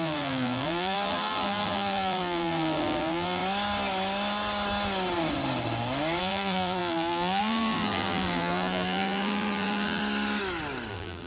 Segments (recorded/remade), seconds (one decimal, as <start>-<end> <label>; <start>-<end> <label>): 0.0-3.4 remade; 3.4-6.2 recorded; 6.2-10.0 remade; 10.0-10.9 recorded; 10.9-11.3 remade